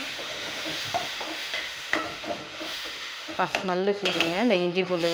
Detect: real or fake fake